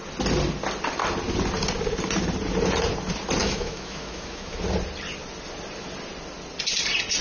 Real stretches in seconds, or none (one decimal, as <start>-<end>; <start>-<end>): 0.0-3.4; 4.6-7.2